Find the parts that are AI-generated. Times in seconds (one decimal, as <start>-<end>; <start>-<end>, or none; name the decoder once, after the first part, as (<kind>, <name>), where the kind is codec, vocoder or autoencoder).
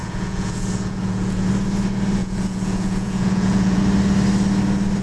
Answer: 0.0-1.5 (vocoder, Vocos); 2.2-3.8